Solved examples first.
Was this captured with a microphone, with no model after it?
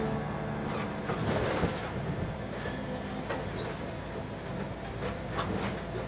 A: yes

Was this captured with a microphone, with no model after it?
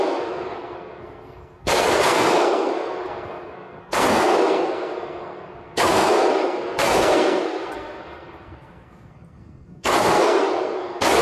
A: no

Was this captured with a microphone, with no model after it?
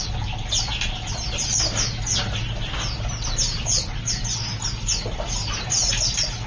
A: yes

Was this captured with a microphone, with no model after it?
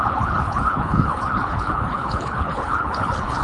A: no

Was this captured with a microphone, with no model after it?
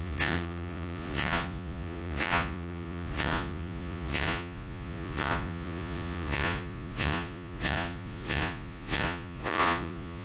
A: no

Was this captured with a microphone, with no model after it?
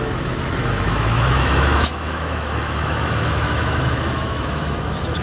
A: no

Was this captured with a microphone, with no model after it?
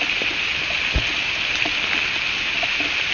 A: yes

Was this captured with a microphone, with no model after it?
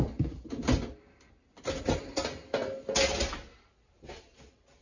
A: yes